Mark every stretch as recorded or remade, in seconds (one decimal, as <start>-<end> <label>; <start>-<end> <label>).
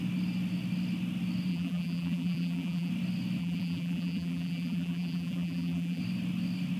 0.0-1.5 recorded; 1.5-2.9 remade; 2.9-3.4 recorded; 3.4-6.0 remade; 6.0-6.8 recorded